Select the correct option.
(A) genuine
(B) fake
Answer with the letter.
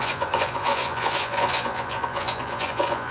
B